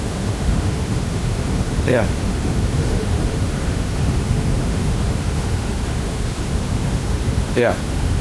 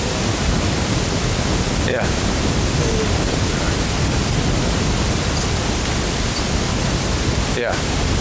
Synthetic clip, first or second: first